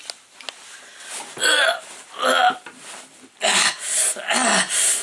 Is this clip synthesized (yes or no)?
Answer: no